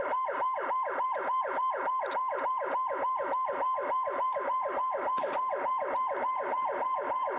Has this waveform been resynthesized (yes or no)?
no